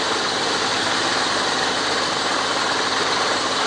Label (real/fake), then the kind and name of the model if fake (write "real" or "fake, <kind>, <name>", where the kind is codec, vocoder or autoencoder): real